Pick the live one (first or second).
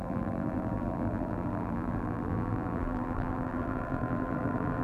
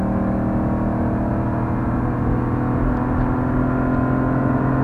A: second